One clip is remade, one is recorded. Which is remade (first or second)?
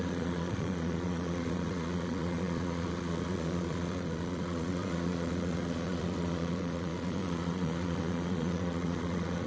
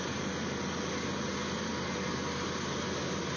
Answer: first